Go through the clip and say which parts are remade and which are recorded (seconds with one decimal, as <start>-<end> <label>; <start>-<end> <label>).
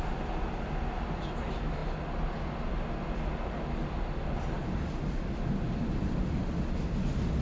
0.0-7.4 recorded